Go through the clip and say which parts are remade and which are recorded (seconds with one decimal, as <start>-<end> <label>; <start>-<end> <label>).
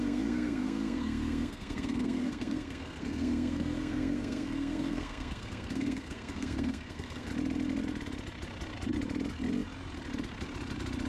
0.0-7.3 remade; 7.3-11.1 recorded